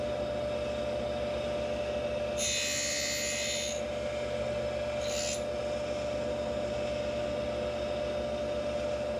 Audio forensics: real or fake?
real